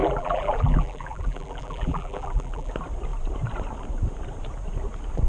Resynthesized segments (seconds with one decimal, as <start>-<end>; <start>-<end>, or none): 0.0-2.7